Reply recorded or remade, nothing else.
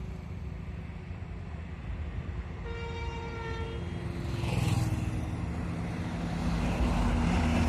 recorded